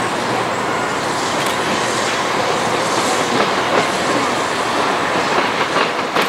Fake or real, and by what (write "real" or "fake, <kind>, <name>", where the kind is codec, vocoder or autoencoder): real